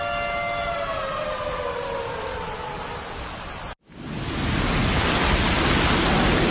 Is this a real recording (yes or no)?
yes